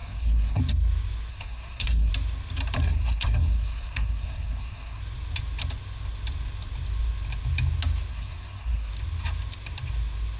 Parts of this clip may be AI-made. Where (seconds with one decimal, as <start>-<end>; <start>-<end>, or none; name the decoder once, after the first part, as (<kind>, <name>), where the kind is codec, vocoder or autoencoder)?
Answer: 0.0-0.6 (codec, SNAC); 1.3-2.1; 2.8-5.0; 8.1-8.9